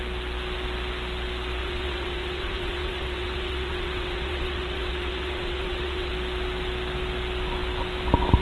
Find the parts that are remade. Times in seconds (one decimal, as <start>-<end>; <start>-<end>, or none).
1.6-6.1